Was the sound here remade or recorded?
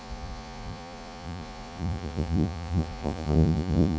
remade